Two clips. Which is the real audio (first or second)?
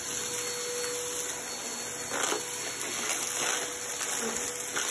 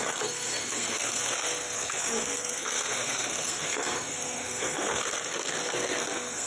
first